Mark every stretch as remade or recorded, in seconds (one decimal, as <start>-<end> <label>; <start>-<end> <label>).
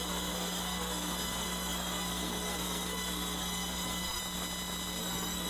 0.0-4.2 remade; 4.2-5.0 recorded; 5.0-5.5 remade